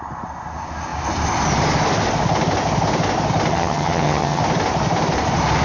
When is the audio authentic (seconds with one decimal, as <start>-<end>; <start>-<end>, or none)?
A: 0.0-3.5; 4.4-5.6